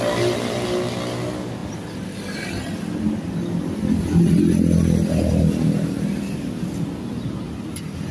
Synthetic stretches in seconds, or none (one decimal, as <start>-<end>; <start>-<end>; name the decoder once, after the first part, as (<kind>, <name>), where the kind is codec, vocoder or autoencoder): 1.6-2.2 (vocoder, BigVGAN v2)